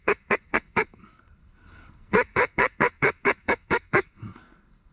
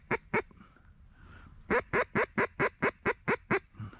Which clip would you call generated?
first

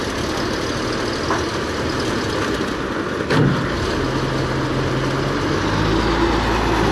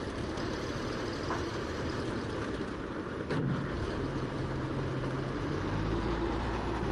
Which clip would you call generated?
second